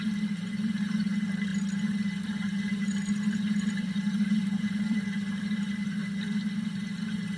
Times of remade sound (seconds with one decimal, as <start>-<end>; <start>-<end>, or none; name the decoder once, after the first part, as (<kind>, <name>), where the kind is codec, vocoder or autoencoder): 0.0-6.0 (vocoder, BigVGAN v2)